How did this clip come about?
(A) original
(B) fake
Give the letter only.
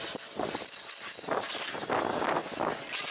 A